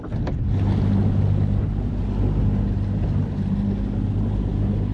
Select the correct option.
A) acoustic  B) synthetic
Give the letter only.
A